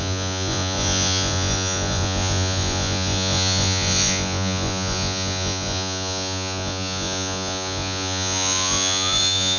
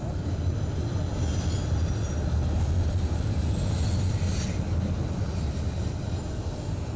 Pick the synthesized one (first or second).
first